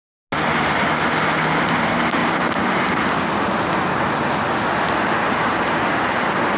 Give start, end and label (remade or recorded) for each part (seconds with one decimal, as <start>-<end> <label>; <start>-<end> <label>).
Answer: 0.0-6.6 recorded